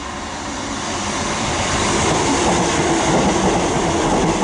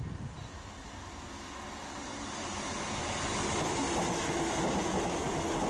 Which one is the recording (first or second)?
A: second